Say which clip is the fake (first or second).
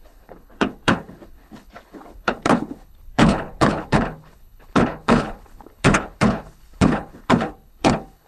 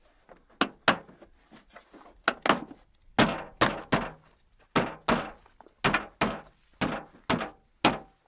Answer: first